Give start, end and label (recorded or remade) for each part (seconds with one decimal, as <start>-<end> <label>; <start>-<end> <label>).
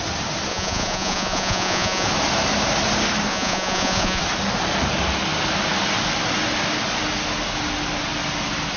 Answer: 0.0-0.5 recorded; 0.5-2.1 remade; 2.1-3.3 recorded; 3.3-4.2 remade; 4.2-8.8 recorded